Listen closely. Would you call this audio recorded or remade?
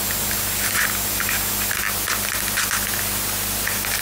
recorded